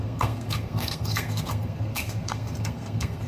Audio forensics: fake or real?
fake